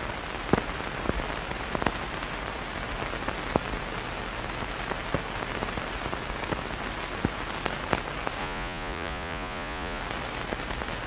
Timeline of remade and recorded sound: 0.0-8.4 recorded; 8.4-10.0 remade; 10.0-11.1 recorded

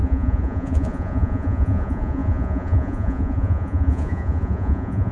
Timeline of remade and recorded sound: 0.0-5.1 remade

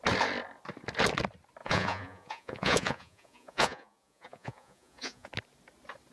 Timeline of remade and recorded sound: 0.0-1.6 recorded; 1.6-5.3 remade; 5.3-6.1 recorded

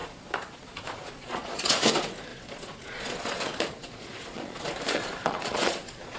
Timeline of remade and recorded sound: 0.0-1.9 remade; 1.9-2.3 recorded; 2.3-6.2 remade

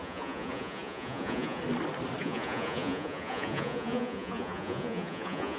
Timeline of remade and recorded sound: 0.0-1.6 remade; 1.6-2.2 recorded; 2.2-5.6 remade

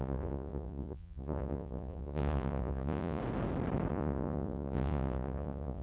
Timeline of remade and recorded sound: 0.0-3.2 remade; 3.2-3.9 recorded; 3.9-5.8 remade

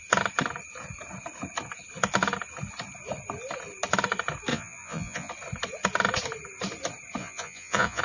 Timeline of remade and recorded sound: 0.0-4.5 recorded; 4.5-5.3 remade; 5.3-7.2 recorded; 7.2-8.0 remade